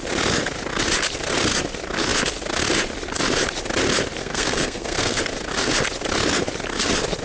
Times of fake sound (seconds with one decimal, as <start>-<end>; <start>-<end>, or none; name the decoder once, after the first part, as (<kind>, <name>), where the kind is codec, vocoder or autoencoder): 4.2-5.2 (codec, SNAC)